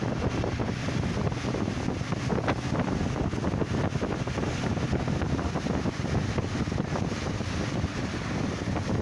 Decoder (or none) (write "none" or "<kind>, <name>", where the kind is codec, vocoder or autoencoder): none